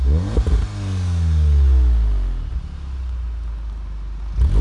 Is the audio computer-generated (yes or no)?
no